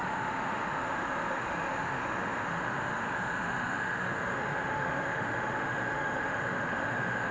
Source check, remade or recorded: remade